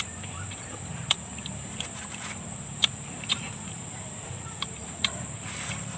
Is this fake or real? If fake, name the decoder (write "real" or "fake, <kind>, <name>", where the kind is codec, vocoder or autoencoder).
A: fake, vocoder, BigVGAN v2